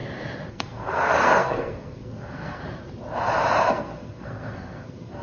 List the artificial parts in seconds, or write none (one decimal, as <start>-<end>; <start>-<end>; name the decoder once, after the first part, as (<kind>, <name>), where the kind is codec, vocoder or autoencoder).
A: 0.5-2.6 (codec, SNAC); 3.7-5.2